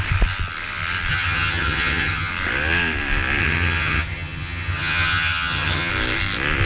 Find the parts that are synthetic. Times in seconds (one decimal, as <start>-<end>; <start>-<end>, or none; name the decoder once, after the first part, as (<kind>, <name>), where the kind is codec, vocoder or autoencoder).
1.1-2.3 (vocoder, HiFi-GAN); 3.4-5.9